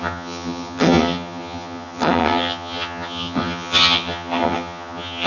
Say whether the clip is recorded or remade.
remade